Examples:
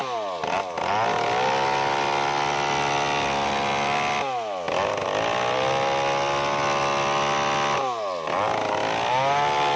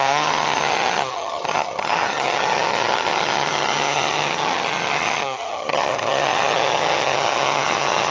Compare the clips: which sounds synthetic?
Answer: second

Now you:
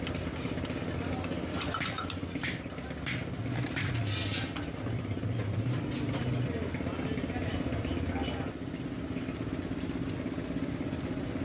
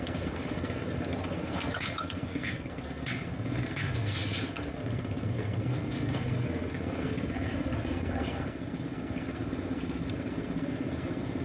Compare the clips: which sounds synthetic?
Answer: second